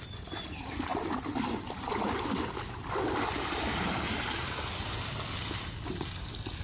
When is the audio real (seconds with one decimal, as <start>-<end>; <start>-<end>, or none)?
0.0-6.6